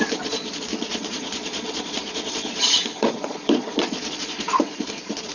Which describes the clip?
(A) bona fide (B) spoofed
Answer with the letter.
B